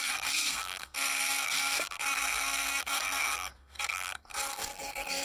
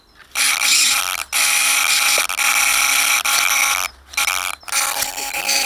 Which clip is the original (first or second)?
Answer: second